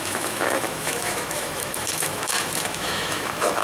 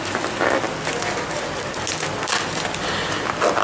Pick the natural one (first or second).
second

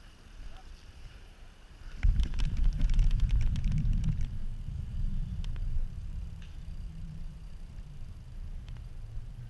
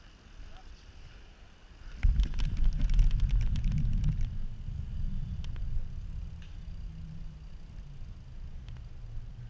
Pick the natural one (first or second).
second